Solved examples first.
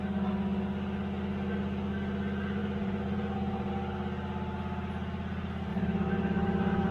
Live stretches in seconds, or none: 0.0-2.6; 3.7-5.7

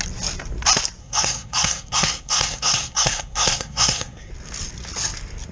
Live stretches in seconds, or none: 0.0-1.0; 4.3-5.5

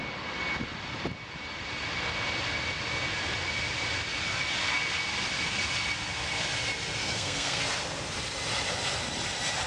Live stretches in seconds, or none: 0.0-7.0; 7.6-9.7

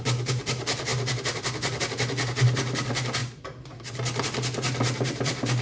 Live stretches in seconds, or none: 0.0-5.6